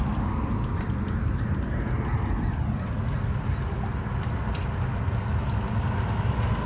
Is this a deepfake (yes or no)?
no